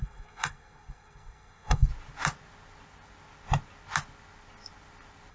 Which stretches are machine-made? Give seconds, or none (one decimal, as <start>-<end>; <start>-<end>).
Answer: 0.0-1.9

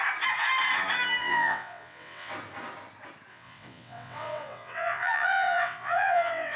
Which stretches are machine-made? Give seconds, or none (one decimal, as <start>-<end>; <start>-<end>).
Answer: 1.2-2.3; 3.3-6.6

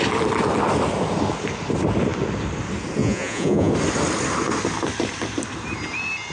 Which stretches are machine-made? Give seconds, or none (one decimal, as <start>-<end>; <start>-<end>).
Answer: 3.0-3.7

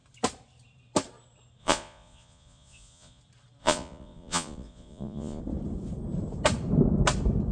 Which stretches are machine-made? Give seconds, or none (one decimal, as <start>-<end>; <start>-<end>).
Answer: 1.6-3.2; 3.6-5.4

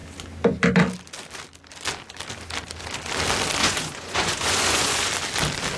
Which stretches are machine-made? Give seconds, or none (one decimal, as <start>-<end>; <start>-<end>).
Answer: 3.6-5.1